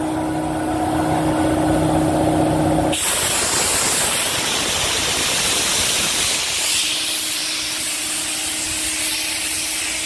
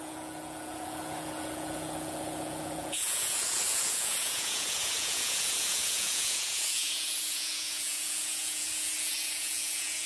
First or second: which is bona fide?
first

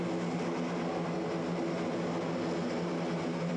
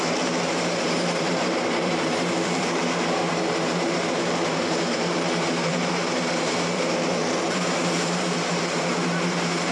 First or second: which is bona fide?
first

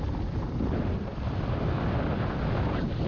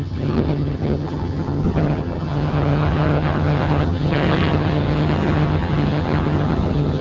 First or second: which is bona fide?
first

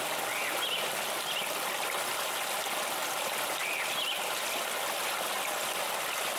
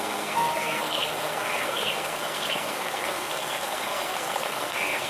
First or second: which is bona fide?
first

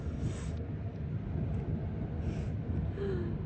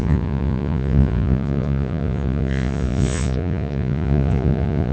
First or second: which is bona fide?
first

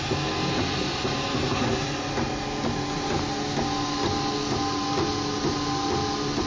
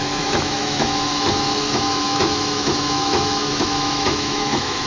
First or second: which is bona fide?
first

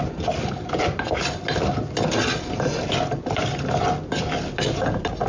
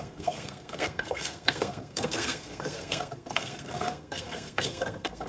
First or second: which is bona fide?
first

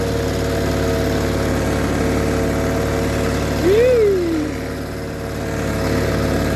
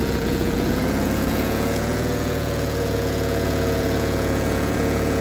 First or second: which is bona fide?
first